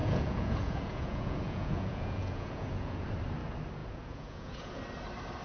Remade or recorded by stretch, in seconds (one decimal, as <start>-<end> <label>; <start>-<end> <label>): 0.0-3.1 remade; 3.1-3.8 recorded; 3.8-4.8 remade; 4.8-5.4 recorded